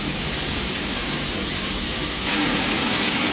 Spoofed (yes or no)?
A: yes